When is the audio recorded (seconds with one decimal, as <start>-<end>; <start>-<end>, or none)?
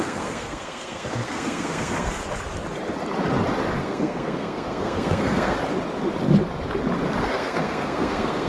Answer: 2.2-3.8; 5.6-7.2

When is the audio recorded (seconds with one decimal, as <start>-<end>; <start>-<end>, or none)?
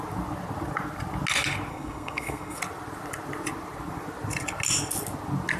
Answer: 0.0-1.7; 2.6-5.6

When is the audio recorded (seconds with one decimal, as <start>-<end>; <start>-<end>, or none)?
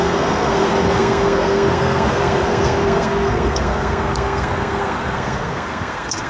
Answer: none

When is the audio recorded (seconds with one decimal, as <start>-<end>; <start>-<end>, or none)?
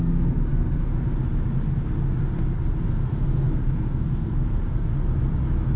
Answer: 0.9-2.9; 4.9-5.8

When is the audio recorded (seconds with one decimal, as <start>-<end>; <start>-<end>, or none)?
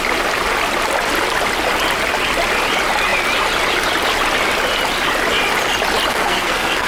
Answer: 0.0-6.1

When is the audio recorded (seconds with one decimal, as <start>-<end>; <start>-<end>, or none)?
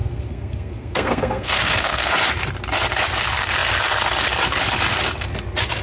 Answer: 2.1-5.8